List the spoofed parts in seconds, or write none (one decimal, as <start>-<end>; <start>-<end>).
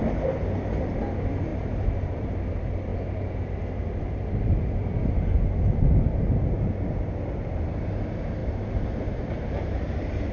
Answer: 1.5-2.4; 8.4-9.5